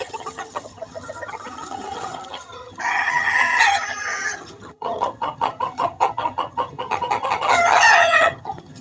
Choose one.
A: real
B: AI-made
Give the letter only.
B